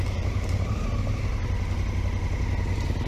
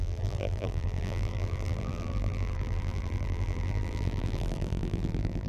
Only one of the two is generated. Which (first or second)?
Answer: second